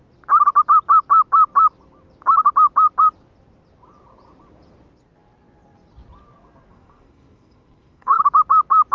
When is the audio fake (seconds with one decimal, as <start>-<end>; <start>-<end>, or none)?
6.7-8.2